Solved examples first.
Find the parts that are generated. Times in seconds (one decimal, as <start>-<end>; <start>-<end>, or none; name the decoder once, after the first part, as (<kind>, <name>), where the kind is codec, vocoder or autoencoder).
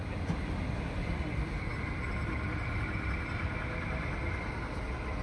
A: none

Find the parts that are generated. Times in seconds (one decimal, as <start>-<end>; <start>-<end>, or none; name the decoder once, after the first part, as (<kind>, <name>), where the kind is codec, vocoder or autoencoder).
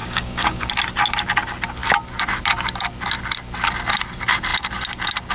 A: 0.0-0.7 (codec, DAC)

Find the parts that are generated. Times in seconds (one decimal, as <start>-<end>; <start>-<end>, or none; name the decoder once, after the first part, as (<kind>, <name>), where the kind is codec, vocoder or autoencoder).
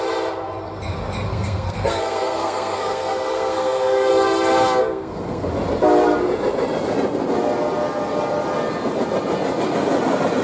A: 1.3-4.1 (codec, SNAC); 4.8-5.5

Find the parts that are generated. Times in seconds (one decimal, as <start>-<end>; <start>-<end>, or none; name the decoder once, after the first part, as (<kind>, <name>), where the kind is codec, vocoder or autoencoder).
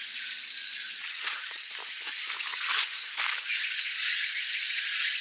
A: 0.6-1.7 (vocoder, Vocos); 2.5-3.2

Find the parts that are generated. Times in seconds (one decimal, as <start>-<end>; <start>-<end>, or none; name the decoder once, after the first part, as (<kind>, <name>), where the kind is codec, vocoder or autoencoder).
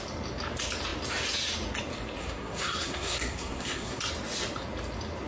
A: 2.2-4.0 (codec, SNAC)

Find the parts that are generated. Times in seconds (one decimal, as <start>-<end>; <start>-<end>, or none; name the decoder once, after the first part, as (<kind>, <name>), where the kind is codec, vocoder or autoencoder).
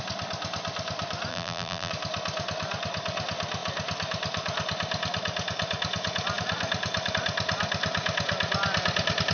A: 1.3-1.9 (vocoder, BigVGAN v2)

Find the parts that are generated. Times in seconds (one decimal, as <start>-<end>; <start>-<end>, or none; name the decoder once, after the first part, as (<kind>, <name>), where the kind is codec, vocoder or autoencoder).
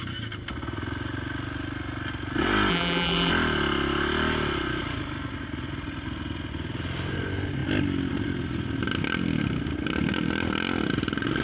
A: 2.7-3.3 (vocoder, BigVGAN v2)